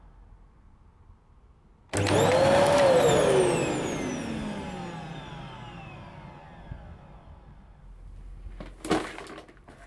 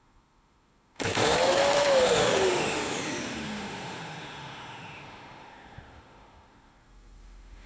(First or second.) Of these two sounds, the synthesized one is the second